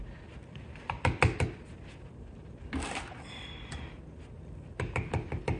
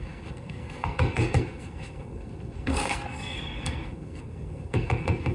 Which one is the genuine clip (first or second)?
first